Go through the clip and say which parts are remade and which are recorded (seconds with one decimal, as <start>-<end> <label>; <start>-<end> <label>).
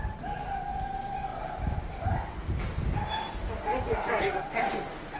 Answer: 0.0-5.2 recorded